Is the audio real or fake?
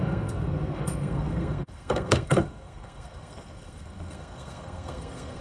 fake